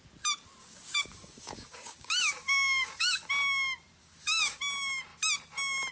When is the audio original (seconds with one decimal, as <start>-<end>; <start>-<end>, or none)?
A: 0.0-0.6; 3.3-4.0; 4.6-5.9

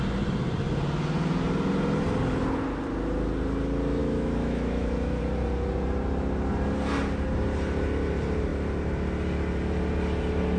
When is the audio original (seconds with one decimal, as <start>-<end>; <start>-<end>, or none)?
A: 0.0-4.0; 5.2-10.6

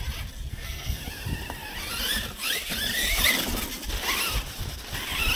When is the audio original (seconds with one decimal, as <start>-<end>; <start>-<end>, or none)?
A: 0.0-0.5; 1.0-5.4

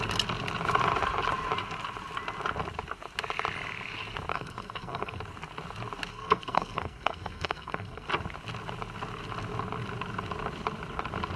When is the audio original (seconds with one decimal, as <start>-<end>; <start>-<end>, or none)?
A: 0.0-4.3; 5.2-6.1; 8.1-11.4

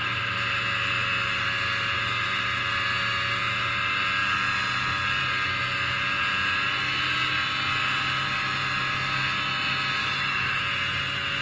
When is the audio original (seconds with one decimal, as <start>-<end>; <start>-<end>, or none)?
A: 0.0-10.0; 10.6-11.4

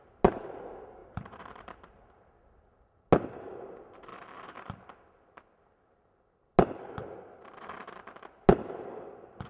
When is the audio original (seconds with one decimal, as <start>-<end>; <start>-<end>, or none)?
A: 0.0-1.0; 2.3-4.1; 4.8-9.5

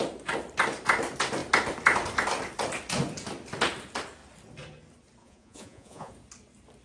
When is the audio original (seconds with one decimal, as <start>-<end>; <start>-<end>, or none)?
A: 0.0-5.2; 6.1-6.8